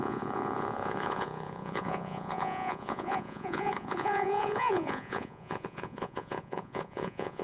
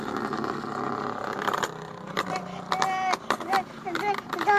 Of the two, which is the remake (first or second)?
first